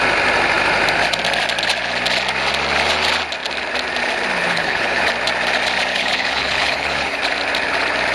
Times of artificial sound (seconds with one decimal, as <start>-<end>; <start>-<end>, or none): 4.4-5.0; 5.9-7.2